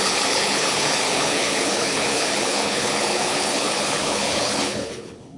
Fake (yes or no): yes